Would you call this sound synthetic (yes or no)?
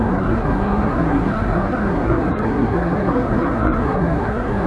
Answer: yes